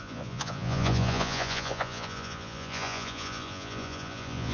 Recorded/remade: remade